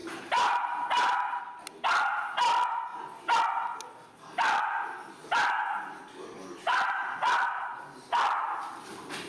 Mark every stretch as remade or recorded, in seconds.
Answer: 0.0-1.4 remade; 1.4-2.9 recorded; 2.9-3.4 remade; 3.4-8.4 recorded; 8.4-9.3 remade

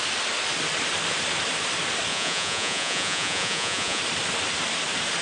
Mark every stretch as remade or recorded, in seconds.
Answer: 0.0-2.1 recorded; 2.1-4.0 remade; 4.0-5.2 recorded